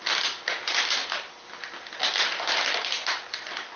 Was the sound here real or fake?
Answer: real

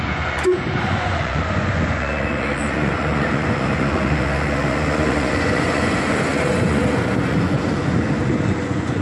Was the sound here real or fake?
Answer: fake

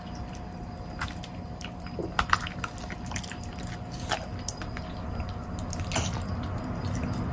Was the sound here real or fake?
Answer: real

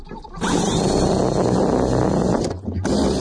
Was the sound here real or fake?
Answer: real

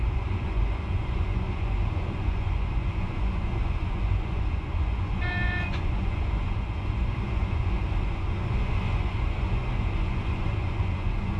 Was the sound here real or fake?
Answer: fake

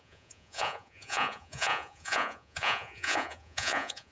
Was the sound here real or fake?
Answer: fake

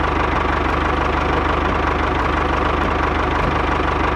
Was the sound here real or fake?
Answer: real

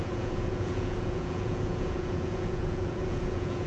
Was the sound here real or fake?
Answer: fake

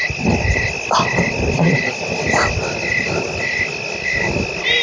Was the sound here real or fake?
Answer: real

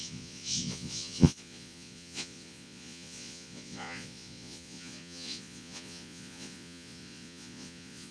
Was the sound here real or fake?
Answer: fake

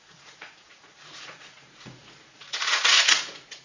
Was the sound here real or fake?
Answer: fake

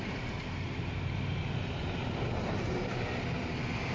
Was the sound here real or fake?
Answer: real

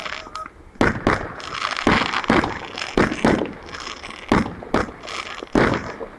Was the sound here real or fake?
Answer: real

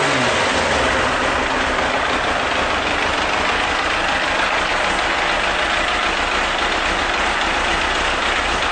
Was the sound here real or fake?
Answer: real